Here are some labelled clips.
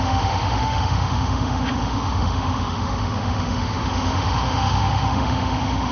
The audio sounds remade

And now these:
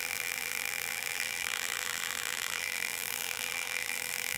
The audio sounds remade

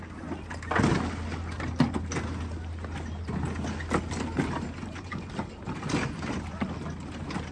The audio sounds recorded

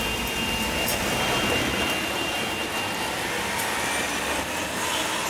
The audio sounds recorded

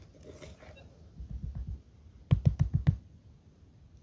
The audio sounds recorded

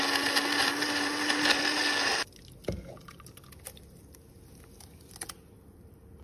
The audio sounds recorded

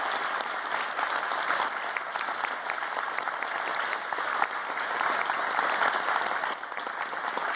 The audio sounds recorded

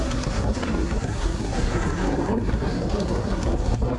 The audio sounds remade